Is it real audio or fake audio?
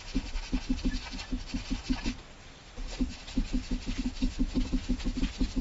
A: real